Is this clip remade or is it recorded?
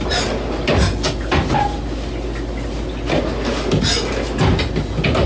recorded